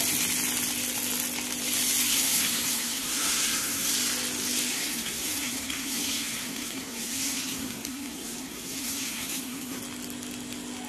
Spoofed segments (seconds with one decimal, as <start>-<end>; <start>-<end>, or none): 2.1-3.9; 4.7-9.8